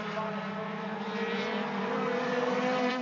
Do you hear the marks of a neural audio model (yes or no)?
yes